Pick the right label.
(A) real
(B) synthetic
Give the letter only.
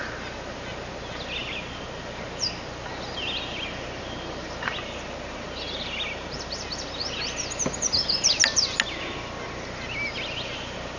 A